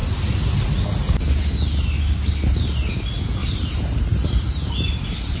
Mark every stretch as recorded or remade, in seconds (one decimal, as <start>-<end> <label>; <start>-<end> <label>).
0.0-3.4 recorded; 3.4-5.4 remade